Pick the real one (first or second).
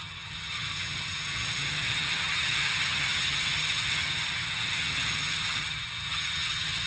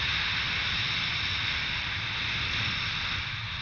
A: second